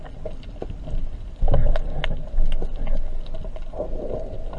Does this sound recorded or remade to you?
recorded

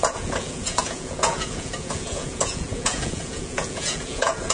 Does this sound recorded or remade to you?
remade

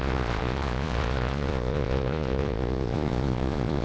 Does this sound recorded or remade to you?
remade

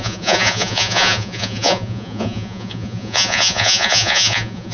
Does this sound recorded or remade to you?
remade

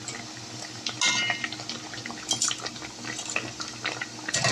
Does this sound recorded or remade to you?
recorded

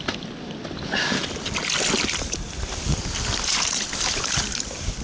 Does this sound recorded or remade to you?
recorded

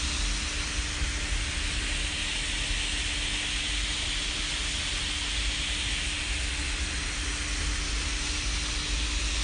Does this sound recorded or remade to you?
recorded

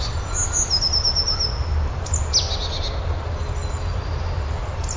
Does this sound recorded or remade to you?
recorded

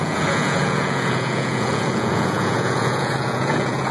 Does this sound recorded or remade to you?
remade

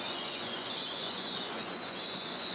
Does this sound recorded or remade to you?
remade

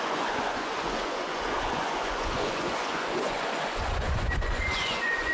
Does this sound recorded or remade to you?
remade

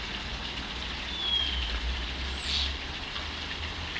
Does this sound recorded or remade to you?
recorded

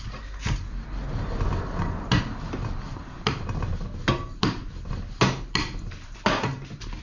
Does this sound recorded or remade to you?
recorded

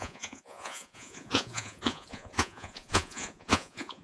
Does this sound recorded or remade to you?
remade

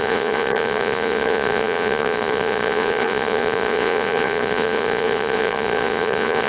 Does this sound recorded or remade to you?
remade